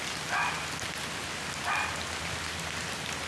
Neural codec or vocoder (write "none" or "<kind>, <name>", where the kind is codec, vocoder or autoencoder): none